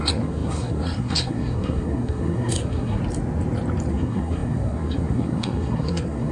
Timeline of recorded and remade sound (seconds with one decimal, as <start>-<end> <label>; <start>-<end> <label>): 0.0-3.0 remade; 3.0-3.9 recorded; 3.9-6.3 remade